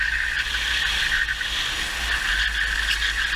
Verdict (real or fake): real